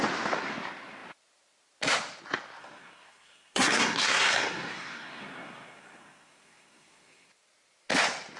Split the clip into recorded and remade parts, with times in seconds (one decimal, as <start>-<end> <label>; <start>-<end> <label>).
0.0-2.6 recorded; 2.6-7.3 remade; 7.3-8.4 recorded